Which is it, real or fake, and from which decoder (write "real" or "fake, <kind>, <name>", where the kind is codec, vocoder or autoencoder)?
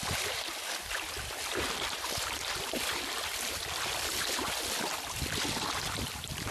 fake, vocoder, BigVGAN v2